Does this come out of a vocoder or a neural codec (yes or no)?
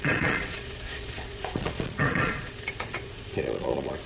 yes